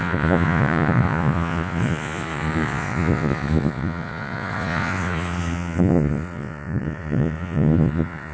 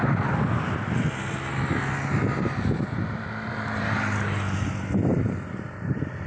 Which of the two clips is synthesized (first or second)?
first